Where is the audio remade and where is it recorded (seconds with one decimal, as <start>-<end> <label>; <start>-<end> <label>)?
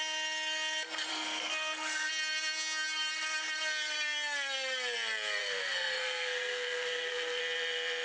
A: 0.0-1.1 recorded; 1.1-2.1 remade; 2.1-5.4 recorded; 5.4-7.4 remade; 7.4-8.0 recorded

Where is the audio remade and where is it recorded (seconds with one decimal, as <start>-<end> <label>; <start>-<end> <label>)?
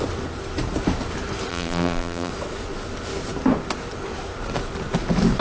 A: 0.0-1.5 recorded; 1.5-2.3 remade; 2.3-5.4 recorded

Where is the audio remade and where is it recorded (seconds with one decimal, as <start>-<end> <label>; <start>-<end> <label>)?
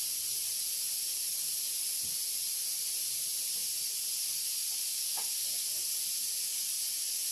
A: 0.0-7.3 recorded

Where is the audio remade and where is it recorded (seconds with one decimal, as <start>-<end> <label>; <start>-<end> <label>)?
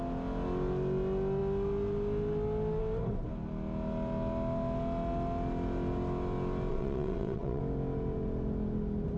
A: 0.0-6.7 recorded; 6.7-7.6 remade; 7.6-9.2 recorded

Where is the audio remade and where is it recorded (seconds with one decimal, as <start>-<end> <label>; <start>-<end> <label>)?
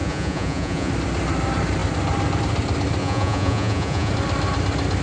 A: 0.0-0.9 remade; 0.9-3.0 recorded; 3.0-4.1 remade; 4.1-5.0 recorded